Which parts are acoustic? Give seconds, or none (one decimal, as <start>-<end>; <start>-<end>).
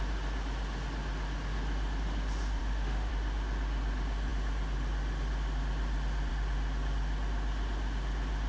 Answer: 0.0-2.6; 3.1-8.5